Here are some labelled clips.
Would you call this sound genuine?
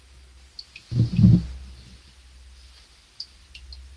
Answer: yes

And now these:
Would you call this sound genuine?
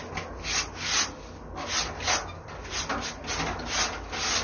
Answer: yes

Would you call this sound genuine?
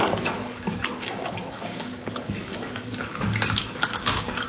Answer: no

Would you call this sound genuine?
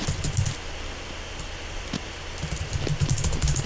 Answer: yes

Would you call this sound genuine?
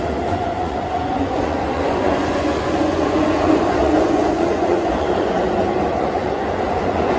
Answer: no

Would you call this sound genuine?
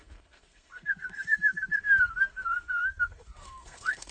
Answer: no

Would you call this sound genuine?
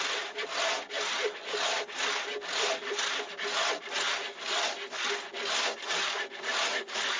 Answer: yes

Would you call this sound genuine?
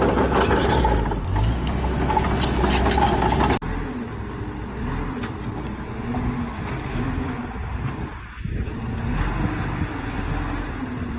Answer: yes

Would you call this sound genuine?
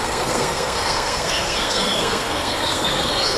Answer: no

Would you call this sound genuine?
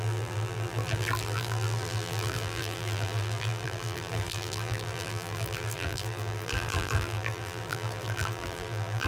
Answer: no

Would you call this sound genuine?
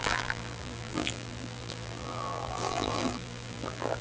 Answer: no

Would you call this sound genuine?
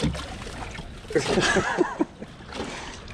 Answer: yes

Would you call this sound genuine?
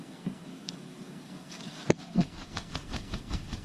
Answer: no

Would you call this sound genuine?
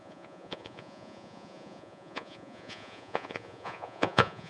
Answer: no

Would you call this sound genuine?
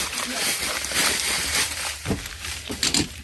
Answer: no